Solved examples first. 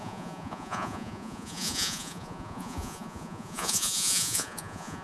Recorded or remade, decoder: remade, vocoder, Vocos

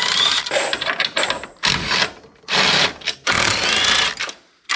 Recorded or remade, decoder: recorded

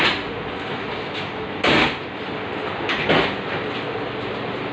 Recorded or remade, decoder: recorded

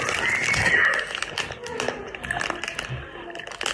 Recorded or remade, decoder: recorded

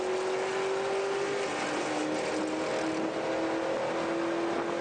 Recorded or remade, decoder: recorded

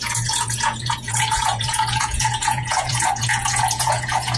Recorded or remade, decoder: remade, vocoder, Vocos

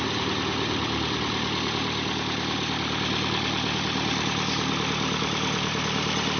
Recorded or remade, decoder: recorded